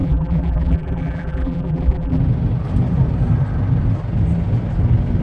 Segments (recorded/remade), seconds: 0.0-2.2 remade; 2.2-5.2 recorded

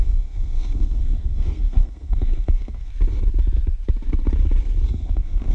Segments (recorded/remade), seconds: 0.0-2.9 remade; 2.9-4.9 recorded; 4.9-5.5 remade

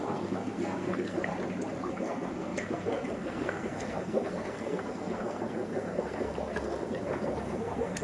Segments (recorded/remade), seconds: 0.0-1.3 remade; 1.3-1.9 recorded; 1.9-8.0 remade

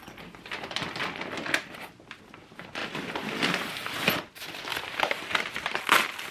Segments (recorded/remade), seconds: 0.0-6.3 recorded

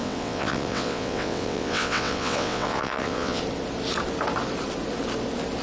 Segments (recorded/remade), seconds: 0.0-3.4 remade; 3.4-5.6 recorded

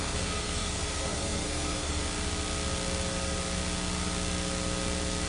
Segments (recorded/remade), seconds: 0.0-2.0 remade; 2.0-5.3 recorded